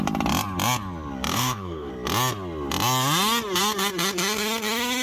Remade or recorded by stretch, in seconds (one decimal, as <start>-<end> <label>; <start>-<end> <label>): 0.0-1.3 recorded; 1.3-1.9 remade; 1.9-5.0 recorded